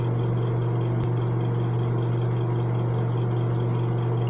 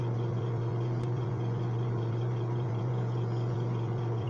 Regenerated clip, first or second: second